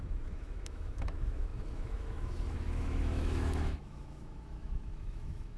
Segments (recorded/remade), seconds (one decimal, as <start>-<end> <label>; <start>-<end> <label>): 0.0-5.6 remade